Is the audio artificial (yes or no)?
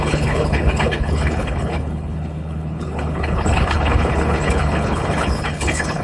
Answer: yes